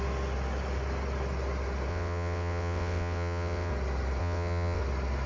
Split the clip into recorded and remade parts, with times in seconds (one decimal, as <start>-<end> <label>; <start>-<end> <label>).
0.0-1.9 recorded; 1.9-3.7 remade; 3.7-4.2 recorded; 4.2-4.8 remade; 4.8-5.3 recorded